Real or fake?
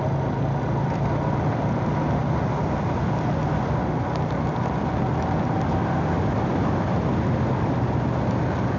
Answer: real